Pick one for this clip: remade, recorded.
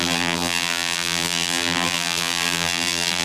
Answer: remade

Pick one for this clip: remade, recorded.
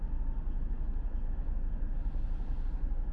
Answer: recorded